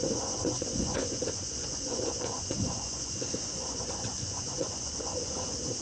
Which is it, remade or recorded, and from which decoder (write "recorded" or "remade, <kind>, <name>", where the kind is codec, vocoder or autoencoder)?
remade, vocoder, Vocos